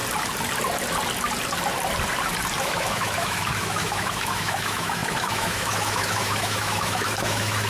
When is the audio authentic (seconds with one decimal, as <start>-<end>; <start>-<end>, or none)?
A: 0.0-2.6